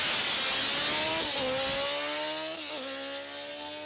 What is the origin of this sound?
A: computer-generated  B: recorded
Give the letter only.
B